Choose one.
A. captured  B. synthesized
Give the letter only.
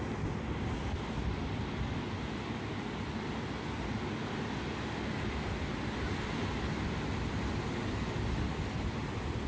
A